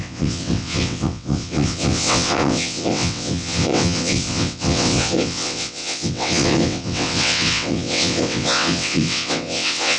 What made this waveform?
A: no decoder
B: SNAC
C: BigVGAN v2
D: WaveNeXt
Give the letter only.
D